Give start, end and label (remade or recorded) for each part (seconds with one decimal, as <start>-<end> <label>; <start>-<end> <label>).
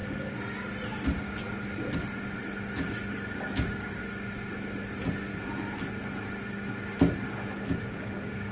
0.0-3.1 recorded; 3.1-4.0 remade; 4.0-7.8 recorded; 7.8-8.5 remade